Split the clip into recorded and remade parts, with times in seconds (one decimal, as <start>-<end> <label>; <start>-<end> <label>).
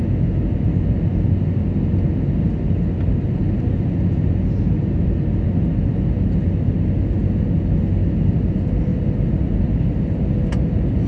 0.0-11.1 recorded